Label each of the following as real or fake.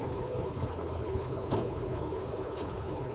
fake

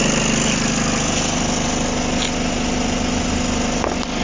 real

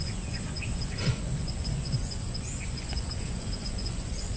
fake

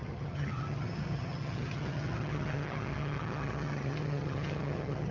fake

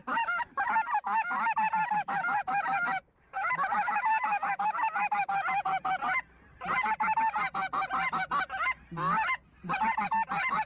real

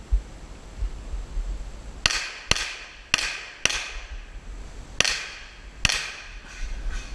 real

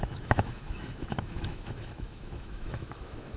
fake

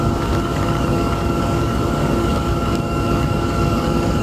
fake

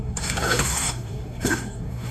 fake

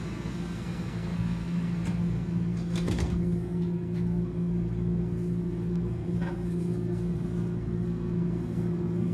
fake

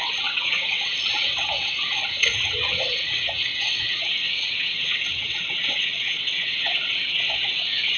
fake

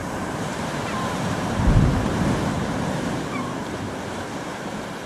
fake